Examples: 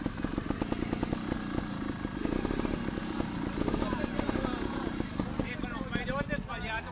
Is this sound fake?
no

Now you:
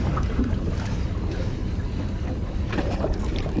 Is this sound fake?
no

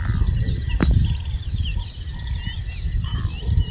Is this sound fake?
no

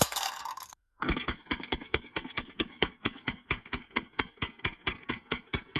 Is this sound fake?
yes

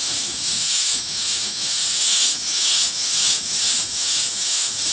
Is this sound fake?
yes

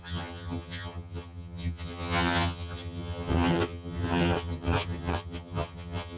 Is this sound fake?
yes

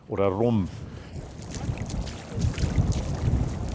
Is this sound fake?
no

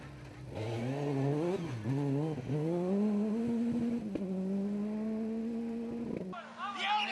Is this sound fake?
no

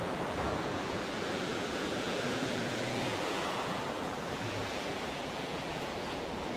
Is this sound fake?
yes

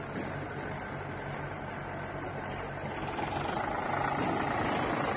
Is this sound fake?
no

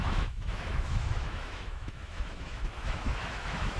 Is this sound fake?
yes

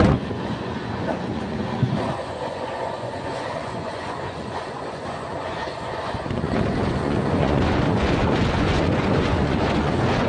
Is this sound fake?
yes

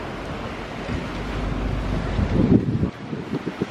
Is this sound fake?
no